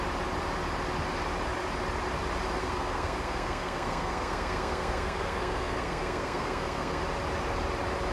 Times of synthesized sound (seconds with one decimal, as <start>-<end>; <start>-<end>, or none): 2.6-7.0

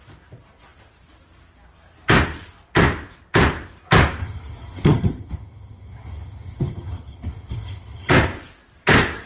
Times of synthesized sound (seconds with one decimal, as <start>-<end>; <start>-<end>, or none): 4.2-8.1

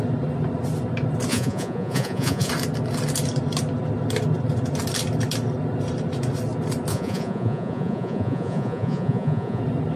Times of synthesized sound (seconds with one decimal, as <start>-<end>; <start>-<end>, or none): 1.3-2.5; 6.9-9.6

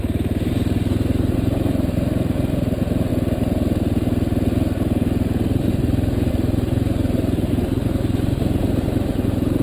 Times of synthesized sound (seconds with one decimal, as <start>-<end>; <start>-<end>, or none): 0.0-3.1; 6.3-9.6